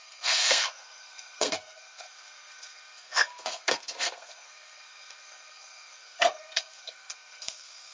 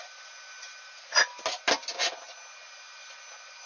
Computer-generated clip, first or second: first